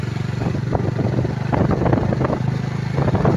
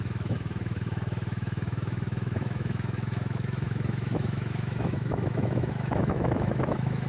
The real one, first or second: first